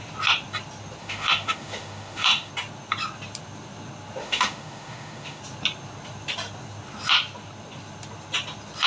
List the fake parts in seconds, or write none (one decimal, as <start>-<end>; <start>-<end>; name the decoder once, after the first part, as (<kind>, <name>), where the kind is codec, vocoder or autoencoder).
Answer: 1.0-2.5 (autoencoder, DAC-VAE); 4.2-5.4